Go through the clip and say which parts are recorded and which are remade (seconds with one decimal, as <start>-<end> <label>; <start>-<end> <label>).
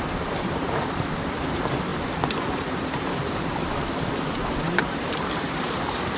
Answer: 0.0-1.9 remade; 1.9-2.5 recorded; 2.5-6.2 remade